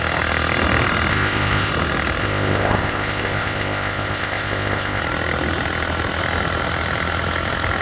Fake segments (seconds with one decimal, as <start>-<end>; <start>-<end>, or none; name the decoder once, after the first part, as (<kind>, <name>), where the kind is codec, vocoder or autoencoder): 1.1-1.7 (codec, ZipCodec); 2.2-5.0